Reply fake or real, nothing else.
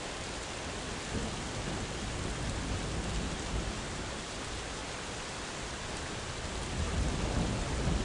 real